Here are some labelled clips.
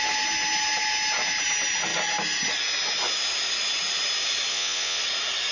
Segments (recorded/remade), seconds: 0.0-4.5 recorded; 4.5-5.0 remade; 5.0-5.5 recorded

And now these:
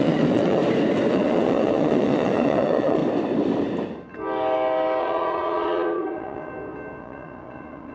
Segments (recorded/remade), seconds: 0.0-0.6 remade; 0.6-1.1 recorded; 1.1-3.0 remade; 3.0-5.0 recorded; 5.0-6.5 remade; 6.5-7.0 recorded; 7.0-7.9 remade

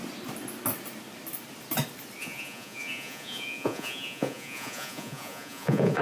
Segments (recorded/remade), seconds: 0.0-2.2 recorded; 2.2-6.0 remade

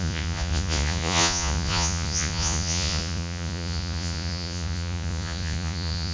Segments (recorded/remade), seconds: 0.0-6.1 remade

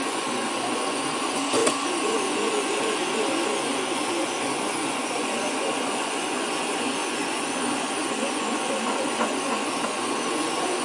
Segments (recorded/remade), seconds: 0.0-10.8 remade